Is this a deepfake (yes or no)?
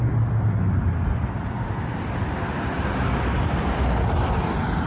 no